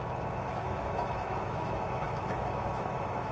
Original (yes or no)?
no